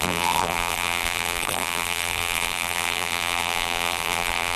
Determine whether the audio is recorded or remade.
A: remade